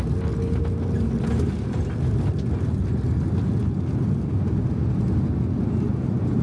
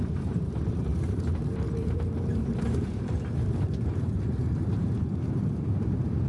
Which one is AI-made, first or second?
second